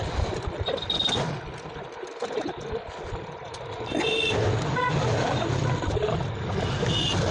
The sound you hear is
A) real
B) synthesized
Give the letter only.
A